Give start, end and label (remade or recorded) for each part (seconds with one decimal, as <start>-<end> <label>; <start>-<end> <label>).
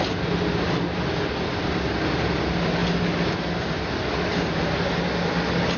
0.0-5.8 recorded